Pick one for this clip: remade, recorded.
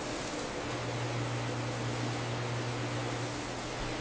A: recorded